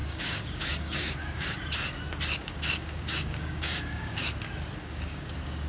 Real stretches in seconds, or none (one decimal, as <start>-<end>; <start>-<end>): 1.6-2.4; 4.2-4.8